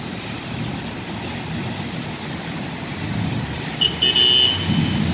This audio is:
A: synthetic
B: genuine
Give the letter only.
B